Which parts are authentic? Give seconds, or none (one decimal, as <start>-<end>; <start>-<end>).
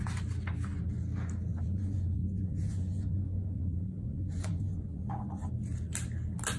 0.0-1.5; 5.5-6.6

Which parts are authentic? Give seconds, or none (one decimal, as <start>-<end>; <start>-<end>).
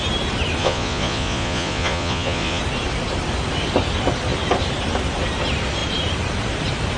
0.0-0.6; 2.6-7.0